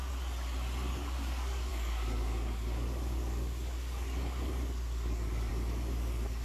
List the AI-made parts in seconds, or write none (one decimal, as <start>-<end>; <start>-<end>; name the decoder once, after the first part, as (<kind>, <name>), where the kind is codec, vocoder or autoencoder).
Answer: 0.9-6.4 (codec, DAC)